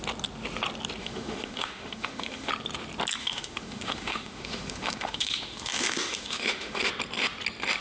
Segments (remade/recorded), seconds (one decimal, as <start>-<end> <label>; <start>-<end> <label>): 0.0-1.0 recorded; 1.0-2.5 remade; 2.5-3.2 recorded; 3.2-6.9 remade; 6.9-7.8 recorded